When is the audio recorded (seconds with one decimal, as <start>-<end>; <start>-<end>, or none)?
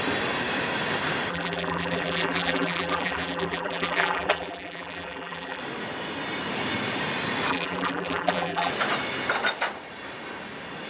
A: 0.0-1.3; 5.6-7.5; 8.7-10.9